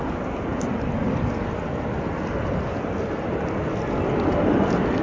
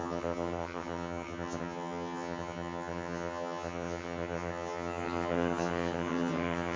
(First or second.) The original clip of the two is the first